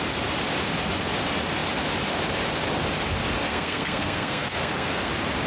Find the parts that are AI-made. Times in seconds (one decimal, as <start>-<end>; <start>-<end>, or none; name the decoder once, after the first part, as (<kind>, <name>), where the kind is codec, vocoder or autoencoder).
3.5-5.1 (codec, SNAC)